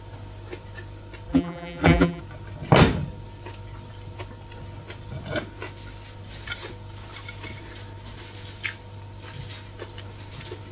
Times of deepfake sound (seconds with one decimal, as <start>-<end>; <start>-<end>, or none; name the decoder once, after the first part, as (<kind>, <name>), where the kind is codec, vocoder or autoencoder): 1.3-2.2 (vocoder, BigVGAN v2)